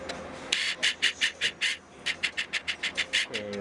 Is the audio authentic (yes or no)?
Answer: yes